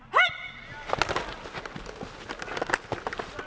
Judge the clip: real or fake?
real